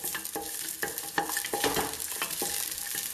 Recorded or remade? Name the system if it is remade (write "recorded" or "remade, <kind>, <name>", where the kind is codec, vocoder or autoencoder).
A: recorded